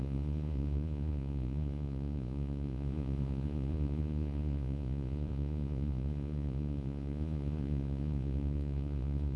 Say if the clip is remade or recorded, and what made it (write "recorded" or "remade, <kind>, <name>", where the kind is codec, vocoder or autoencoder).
remade, vocoder, Vocos